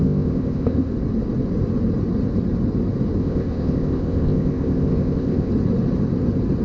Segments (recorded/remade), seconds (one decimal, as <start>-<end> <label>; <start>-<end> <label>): 0.0-0.9 remade; 0.9-3.2 recorded; 3.2-5.5 remade; 5.5-6.6 recorded